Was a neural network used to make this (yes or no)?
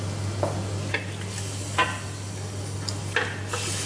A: no